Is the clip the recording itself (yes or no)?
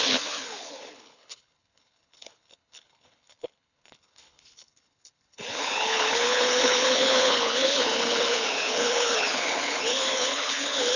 no